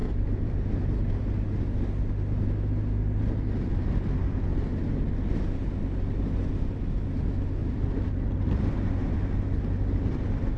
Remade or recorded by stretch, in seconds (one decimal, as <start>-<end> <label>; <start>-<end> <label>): 0.0-1.2 remade; 1.2-7.6 recorded; 7.6-8.3 remade; 8.3-10.6 recorded

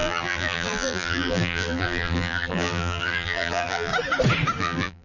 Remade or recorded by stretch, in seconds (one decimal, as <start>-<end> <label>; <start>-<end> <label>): 0.0-3.9 remade; 3.9-4.6 recorded; 4.6-5.0 remade